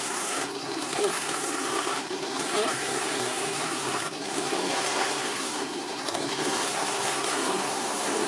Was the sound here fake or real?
fake